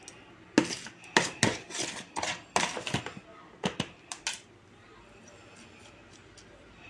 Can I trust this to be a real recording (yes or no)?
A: yes